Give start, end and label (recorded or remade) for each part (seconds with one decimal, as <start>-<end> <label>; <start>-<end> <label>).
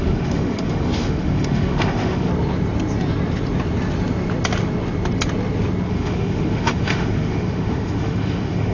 0.0-2.3 remade; 2.3-5.9 recorded; 5.9-8.7 remade